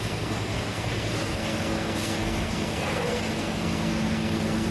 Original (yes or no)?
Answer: no